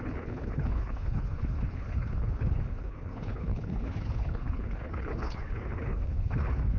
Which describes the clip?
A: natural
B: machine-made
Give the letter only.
B